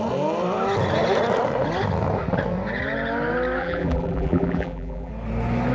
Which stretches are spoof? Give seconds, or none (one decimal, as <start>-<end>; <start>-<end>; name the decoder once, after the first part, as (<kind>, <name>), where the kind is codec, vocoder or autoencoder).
3.6-5.1 (vocoder, BigVGAN v2)